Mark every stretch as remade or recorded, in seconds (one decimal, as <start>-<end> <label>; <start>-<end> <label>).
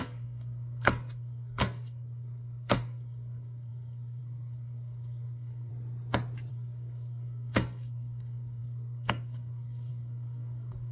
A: 0.0-5.7 remade; 5.7-6.5 recorded; 6.5-10.9 remade